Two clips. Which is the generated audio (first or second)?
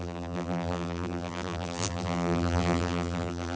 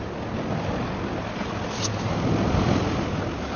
first